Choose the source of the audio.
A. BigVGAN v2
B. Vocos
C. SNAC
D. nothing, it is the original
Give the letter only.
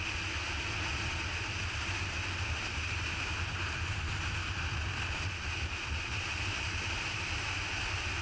D